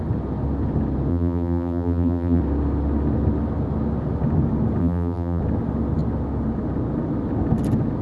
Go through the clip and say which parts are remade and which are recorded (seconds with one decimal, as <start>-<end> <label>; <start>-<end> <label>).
0.0-1.1 recorded; 1.1-2.4 remade; 2.4-4.8 recorded; 4.8-5.4 remade; 5.4-8.0 recorded